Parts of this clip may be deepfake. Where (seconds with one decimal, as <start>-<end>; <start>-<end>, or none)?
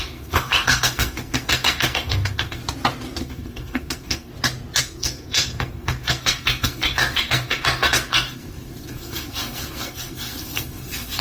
0.0-2.6; 3.2-4.3; 4.8-11.2